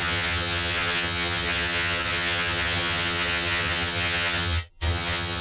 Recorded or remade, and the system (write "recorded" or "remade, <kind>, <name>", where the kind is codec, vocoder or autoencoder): remade, vocoder, HiFi-GAN